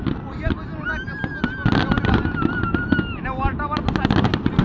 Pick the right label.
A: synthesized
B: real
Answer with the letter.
B